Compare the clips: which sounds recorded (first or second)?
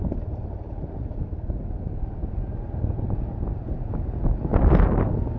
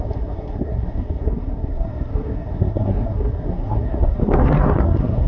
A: first